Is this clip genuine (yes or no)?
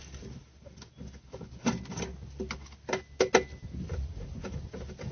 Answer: yes